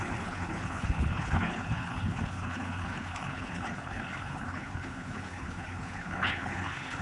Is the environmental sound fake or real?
fake